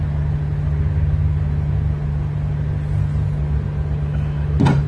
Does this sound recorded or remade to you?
recorded